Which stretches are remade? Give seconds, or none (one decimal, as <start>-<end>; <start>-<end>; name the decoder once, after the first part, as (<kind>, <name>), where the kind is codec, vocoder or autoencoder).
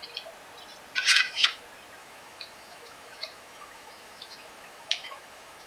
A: 1.1-1.6 (autoencoder, DAC-VAE); 2.0-5.7